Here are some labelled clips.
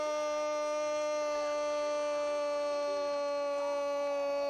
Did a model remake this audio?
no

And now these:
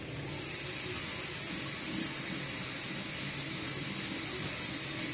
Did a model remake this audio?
no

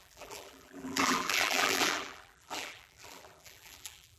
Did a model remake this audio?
yes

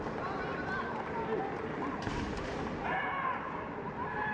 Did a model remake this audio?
no